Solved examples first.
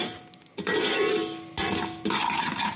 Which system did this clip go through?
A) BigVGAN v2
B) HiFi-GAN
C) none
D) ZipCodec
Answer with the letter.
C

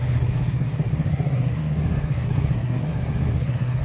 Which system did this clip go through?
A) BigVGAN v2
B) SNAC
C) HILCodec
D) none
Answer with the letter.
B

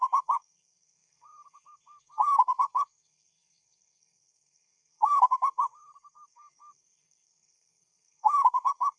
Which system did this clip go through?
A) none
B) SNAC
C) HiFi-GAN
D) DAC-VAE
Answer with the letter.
B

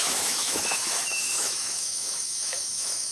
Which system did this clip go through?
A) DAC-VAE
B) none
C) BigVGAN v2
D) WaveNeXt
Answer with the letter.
A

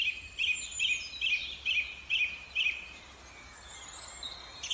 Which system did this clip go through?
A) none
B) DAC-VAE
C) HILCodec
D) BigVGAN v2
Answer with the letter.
A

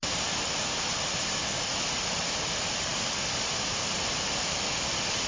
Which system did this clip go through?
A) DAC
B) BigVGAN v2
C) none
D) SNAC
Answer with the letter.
C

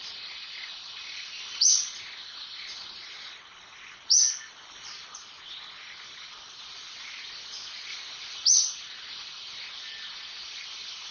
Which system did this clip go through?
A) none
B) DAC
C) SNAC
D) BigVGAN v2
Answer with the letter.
A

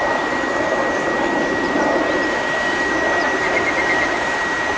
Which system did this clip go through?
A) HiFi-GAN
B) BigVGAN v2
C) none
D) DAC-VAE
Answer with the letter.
B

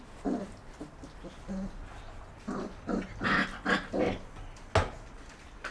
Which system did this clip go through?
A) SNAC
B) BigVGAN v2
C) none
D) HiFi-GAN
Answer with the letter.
C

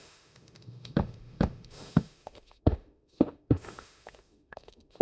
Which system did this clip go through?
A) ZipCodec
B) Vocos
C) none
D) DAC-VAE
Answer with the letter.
D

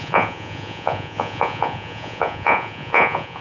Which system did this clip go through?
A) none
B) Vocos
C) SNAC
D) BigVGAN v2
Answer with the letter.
B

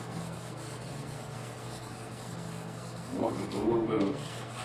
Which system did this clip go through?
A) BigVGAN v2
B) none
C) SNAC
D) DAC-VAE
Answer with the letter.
C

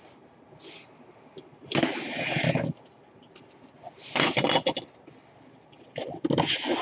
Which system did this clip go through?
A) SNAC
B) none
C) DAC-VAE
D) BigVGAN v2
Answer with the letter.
B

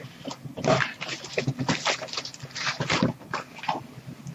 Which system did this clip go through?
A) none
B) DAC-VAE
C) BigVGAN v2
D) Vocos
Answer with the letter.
A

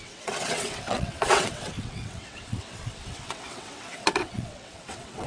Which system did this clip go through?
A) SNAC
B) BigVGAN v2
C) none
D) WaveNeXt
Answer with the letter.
D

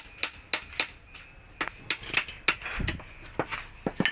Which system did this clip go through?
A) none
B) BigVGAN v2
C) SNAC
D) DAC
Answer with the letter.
A